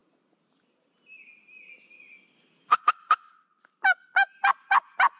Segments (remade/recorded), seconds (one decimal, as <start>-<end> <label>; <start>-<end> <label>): 0.0-5.2 recorded

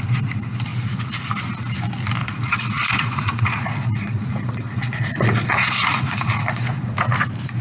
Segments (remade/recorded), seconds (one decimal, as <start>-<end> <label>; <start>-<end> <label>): 0.0-2.2 recorded; 2.2-6.8 remade; 6.8-7.6 recorded

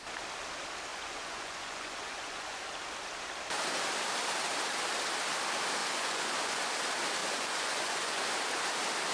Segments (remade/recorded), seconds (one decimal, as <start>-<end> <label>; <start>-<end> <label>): 0.0-0.9 recorded; 0.9-2.6 remade; 2.6-5.8 recorded; 5.8-6.7 remade; 6.7-7.2 recorded; 7.2-8.3 remade; 8.3-9.1 recorded

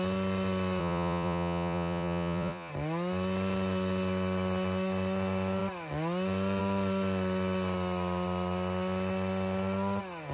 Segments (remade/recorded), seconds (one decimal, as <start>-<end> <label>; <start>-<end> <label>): 0.0-0.8 recorded; 0.8-2.7 remade; 2.7-10.3 recorded